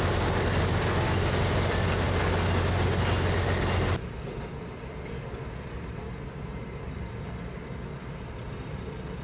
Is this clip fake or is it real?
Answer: real